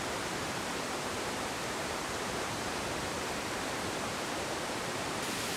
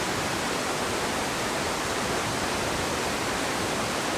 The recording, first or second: second